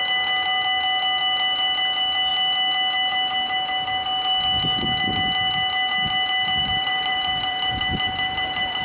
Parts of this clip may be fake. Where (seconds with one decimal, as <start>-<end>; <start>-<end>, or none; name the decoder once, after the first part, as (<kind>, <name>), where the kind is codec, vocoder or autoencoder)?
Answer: 6.6-8.8 (vocoder, BigVGAN v2)